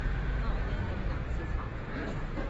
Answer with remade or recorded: remade